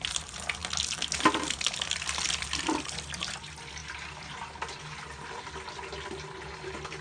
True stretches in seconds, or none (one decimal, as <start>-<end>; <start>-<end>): 0.0-7.0